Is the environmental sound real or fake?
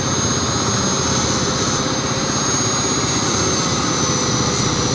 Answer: real